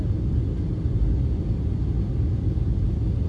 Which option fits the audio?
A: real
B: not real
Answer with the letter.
A